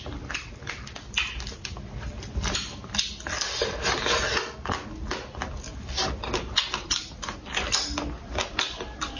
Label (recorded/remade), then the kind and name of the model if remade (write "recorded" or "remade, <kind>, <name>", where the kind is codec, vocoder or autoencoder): recorded